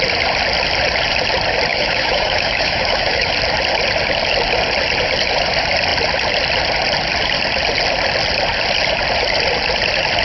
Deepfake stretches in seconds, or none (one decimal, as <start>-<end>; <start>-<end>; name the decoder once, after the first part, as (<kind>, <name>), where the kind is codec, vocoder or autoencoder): 1.7-3.3 (autoencoder, DAC-VAE)